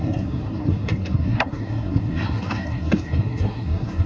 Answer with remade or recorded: remade